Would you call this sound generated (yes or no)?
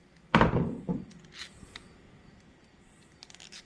no